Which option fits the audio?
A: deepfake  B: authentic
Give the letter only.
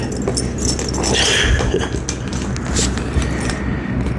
B